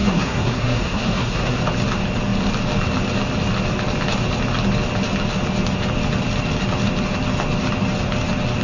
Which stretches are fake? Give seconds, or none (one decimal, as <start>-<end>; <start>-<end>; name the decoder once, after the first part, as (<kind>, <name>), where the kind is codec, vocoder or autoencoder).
0.0-1.6 (codec, SNAC)